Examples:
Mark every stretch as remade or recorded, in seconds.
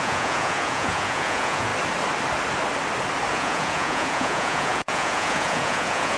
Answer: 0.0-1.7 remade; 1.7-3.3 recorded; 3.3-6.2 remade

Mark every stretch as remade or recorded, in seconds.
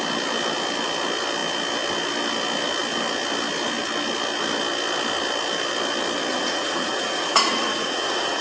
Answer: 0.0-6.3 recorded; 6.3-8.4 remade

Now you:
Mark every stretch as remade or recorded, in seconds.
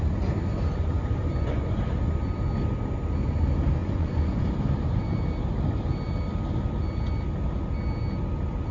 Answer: 0.0-1.2 recorded; 1.2-1.8 remade; 1.8-3.8 recorded; 3.8-4.5 remade; 4.5-8.7 recorded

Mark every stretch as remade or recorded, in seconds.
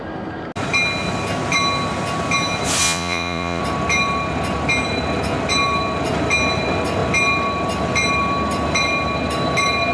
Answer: 0.0-2.8 recorded; 2.8-3.6 remade; 3.6-9.9 recorded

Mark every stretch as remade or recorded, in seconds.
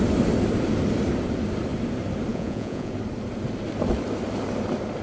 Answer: 0.0-2.3 recorded; 2.3-2.9 remade; 2.9-5.0 recorded